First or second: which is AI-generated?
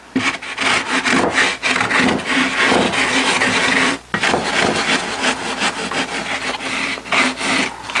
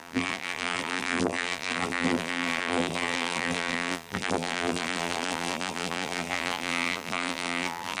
second